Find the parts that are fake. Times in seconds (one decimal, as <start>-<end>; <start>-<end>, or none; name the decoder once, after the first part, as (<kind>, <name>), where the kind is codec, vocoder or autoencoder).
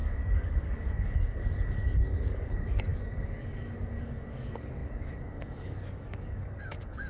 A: 0.0-7.1 (codec, DAC)